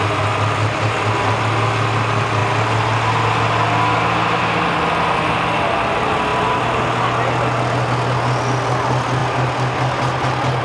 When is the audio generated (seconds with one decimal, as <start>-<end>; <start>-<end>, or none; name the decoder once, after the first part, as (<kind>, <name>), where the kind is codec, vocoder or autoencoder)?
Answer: none

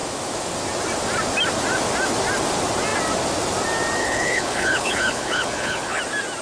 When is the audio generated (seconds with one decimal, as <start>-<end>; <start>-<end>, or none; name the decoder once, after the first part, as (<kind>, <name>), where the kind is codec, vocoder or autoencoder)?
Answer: 4.0-6.0 (codec, HILCodec)

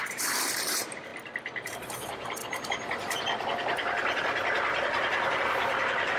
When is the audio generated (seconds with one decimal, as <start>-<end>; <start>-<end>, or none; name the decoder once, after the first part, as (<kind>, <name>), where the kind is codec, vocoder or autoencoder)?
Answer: 0.0-1.1 (vocoder, BigVGAN v2); 1.7-2.4

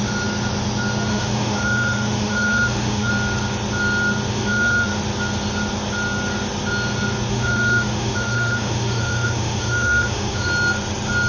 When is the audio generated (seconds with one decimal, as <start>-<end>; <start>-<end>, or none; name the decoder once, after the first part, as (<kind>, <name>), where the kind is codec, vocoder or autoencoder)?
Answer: 1.1-3.1 (autoencoder, DAC-VAE); 4.3-5.0; 7.3-10.5

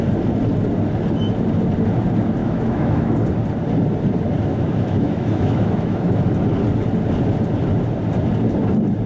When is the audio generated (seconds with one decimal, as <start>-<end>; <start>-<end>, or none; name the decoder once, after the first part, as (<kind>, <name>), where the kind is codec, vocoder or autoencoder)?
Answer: 2.4-3.1 (autoencoder, DAC-VAE); 4.5-6.2

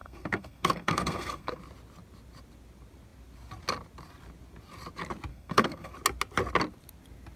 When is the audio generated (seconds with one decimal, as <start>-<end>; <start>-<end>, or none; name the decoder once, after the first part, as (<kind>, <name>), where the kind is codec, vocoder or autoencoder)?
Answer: 0.0-1.6 (codec, SNAC); 5.3-5.9